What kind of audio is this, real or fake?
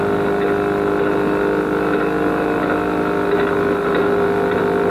real